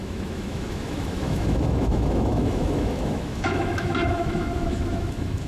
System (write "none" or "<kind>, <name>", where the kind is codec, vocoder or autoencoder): autoencoder, DAC-VAE